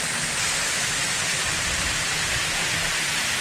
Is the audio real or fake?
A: real